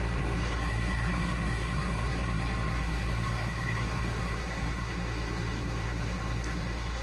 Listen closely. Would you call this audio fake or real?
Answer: fake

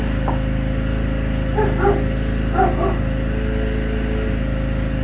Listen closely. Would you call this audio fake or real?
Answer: real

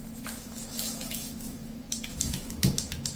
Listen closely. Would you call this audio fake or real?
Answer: fake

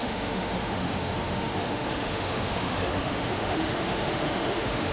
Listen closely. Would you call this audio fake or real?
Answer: fake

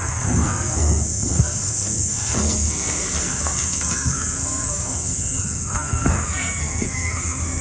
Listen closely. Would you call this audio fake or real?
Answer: fake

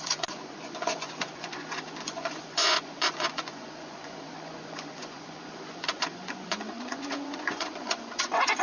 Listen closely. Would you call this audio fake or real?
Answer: fake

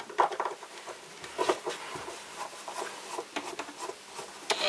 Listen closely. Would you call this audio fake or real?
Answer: real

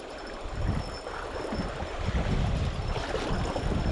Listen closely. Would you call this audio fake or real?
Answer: real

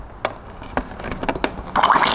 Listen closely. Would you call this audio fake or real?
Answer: real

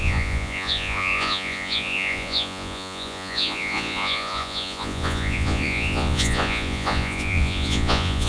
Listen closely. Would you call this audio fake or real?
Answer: fake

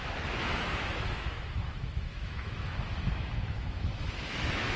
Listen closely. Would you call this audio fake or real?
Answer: fake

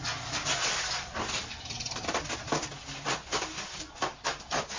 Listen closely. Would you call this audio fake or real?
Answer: real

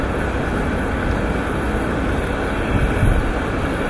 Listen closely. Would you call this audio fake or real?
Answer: real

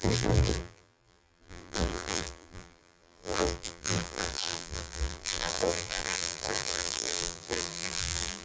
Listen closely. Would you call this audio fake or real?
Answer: fake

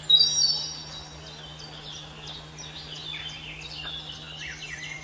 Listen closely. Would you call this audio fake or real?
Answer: real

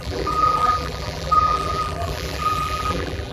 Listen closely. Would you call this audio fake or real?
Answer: fake